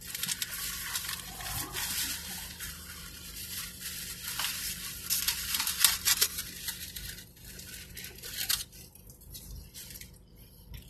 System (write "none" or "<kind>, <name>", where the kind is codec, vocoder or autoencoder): vocoder, BigVGAN v2